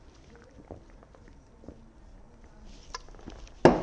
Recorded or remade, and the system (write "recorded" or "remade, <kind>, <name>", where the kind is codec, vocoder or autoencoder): recorded